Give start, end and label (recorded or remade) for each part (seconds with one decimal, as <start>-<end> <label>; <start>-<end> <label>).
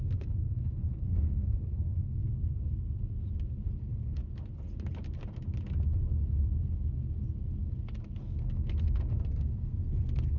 0.0-2.2 remade; 2.2-3.8 recorded; 3.8-4.2 remade; 4.2-8.2 recorded; 8.2-10.4 remade